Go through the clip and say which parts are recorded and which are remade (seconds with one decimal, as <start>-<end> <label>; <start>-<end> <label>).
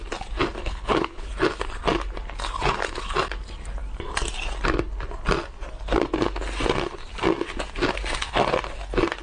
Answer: 0.0-0.6 recorded; 0.6-1.3 remade; 1.3-9.2 recorded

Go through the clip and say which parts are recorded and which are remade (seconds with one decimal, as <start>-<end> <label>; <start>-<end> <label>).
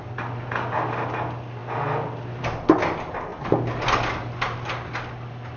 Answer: 0.0-5.6 recorded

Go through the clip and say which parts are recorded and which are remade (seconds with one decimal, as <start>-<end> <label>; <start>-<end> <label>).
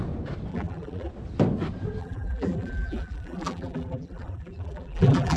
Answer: 0.0-0.5 recorded; 0.5-1.1 remade; 1.1-2.0 recorded; 2.0-5.4 remade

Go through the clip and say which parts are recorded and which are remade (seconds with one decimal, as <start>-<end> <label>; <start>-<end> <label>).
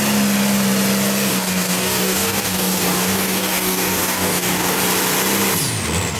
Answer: 0.0-1.3 recorded; 1.3-4.8 remade; 4.8-6.2 recorded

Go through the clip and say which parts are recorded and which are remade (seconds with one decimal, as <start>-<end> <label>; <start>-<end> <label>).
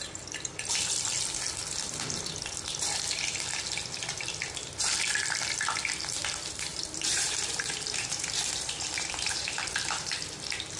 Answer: 0.0-6.7 recorded; 6.7-10.1 remade; 10.1-10.8 recorded